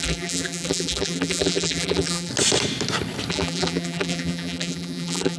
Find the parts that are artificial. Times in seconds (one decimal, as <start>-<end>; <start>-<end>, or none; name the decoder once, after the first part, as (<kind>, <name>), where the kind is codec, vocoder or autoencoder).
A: 0.0-2.3 (vocoder, BigVGAN v2); 3.3-5.4